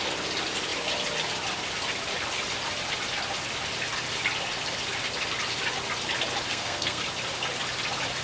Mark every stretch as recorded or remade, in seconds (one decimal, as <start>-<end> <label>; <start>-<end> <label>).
0.0-6.5 recorded; 6.5-7.0 remade; 7.0-8.2 recorded